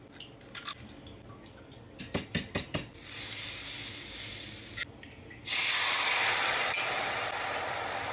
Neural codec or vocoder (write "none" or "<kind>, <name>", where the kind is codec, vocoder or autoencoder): none